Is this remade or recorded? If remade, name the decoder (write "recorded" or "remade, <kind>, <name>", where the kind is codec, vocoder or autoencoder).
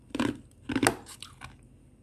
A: recorded